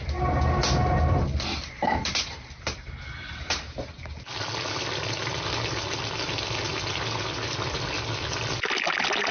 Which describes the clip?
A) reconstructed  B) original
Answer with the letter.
B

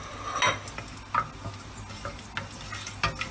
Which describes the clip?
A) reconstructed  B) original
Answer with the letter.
B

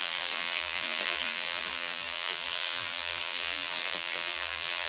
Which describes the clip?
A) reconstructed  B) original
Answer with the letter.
A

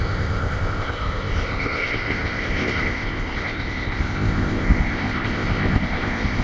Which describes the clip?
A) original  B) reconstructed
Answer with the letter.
B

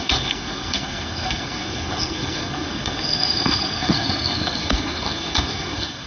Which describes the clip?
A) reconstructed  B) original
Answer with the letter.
A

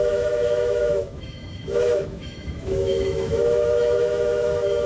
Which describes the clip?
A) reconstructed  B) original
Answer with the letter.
A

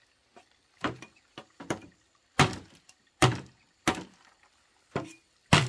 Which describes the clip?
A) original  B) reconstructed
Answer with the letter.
B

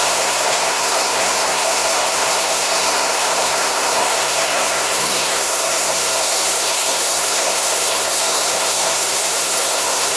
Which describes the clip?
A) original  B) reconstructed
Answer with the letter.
B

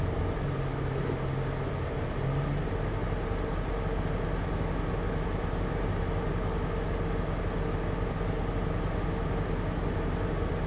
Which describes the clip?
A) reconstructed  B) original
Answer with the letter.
B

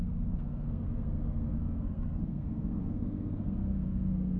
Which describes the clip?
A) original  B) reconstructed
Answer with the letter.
B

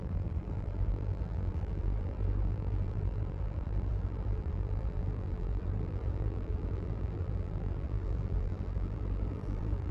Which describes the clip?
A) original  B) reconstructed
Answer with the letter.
B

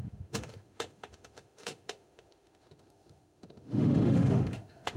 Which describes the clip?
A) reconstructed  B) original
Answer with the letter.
A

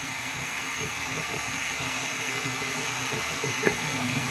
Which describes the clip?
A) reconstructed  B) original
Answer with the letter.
A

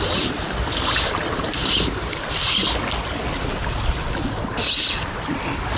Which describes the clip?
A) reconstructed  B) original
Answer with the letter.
B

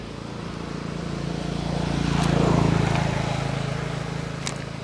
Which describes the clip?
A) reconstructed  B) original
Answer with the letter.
B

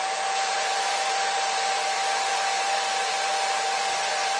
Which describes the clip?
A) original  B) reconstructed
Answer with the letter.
B